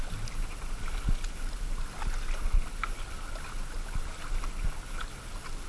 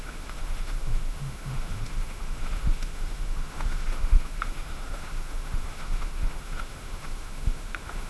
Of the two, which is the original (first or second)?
first